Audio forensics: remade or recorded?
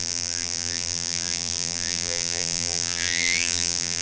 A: remade